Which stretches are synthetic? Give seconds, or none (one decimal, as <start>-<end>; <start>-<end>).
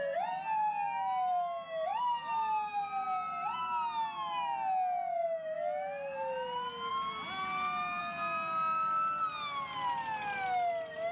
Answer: none